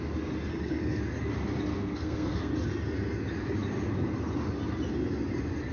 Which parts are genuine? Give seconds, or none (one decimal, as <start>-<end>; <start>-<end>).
0.0-0.5; 1.0-1.7; 2.5-5.7